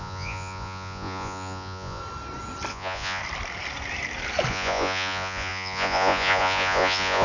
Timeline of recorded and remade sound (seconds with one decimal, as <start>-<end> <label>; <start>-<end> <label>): 0.0-2.0 remade; 2.0-2.7 recorded; 2.7-3.2 remade; 3.2-4.5 recorded; 4.5-7.2 remade